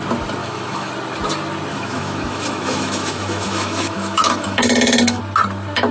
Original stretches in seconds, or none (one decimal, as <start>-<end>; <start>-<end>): 0.0-0.4; 0.9-1.7; 5.2-5.9